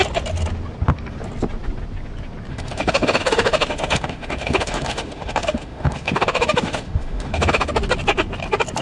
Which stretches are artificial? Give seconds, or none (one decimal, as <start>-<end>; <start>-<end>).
2.5-7.7